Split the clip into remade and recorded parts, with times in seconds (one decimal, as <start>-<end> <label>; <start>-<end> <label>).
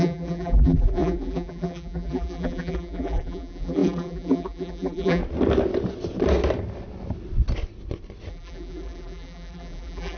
0.0-5.2 remade; 5.2-8.3 recorded; 8.3-10.2 remade